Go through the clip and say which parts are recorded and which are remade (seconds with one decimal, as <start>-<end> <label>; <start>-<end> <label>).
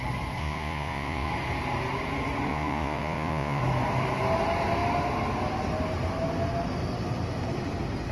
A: 0.0-0.4 recorded; 0.4-1.3 remade; 1.3-2.5 recorded; 2.5-3.6 remade; 3.6-8.1 recorded